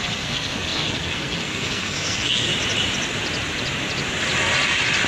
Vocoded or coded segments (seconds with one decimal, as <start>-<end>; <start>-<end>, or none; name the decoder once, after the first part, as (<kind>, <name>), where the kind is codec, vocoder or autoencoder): 0.0-2.5 (codec, SNAC)